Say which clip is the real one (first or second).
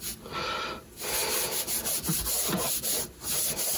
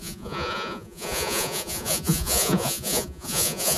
first